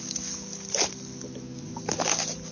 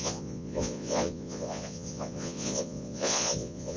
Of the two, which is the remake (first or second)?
second